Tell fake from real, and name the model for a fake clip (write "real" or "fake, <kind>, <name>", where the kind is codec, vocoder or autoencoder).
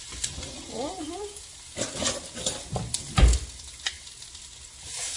real